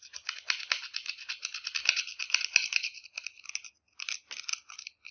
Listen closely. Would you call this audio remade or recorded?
recorded